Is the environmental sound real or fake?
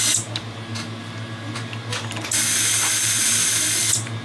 real